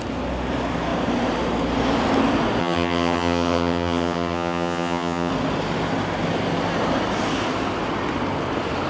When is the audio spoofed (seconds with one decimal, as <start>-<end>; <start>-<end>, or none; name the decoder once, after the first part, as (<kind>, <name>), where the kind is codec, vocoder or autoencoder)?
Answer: 2.6-5.3 (vocoder, HiFi-GAN)